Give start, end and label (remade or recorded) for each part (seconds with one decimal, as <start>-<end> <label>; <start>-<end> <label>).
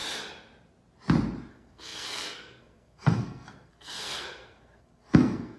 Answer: 0.0-1.5 recorded; 1.5-5.6 remade